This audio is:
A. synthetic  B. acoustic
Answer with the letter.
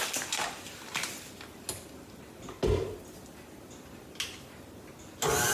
B